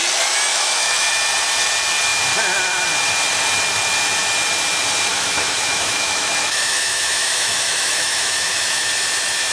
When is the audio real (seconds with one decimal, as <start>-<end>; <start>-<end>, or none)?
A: 0.0-0.5; 1.1-5.1; 8.9-9.5